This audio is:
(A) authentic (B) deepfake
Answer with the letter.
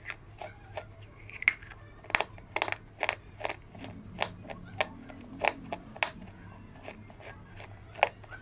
A